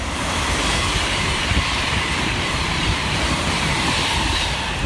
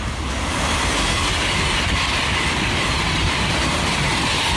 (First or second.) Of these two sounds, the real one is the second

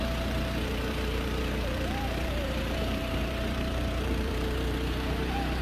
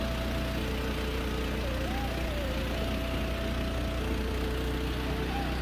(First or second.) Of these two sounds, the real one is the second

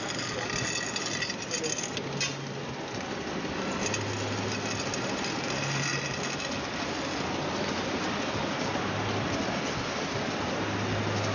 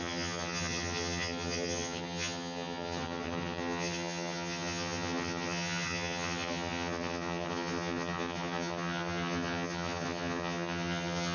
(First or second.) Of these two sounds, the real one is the first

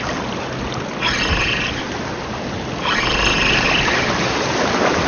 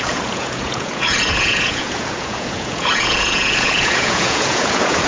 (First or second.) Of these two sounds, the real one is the first